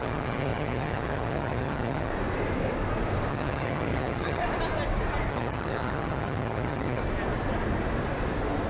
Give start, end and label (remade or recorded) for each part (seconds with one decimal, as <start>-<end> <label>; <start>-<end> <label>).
0.0-2.1 remade; 2.1-3.3 recorded; 3.3-4.4 remade; 4.4-5.3 recorded; 5.3-7.0 remade; 7.0-8.7 recorded